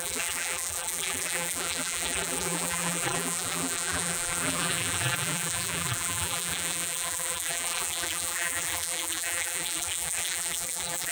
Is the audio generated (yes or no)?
yes